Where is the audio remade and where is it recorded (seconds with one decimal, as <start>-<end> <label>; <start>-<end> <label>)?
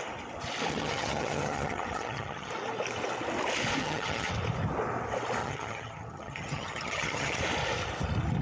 0.0-0.7 recorded; 0.7-2.5 remade; 2.5-3.8 recorded; 3.8-4.3 remade; 4.3-5.4 recorded; 5.4-7.4 remade; 7.4-8.4 recorded